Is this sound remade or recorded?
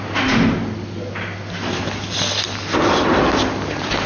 recorded